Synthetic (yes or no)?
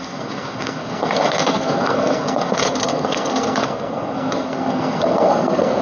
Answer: yes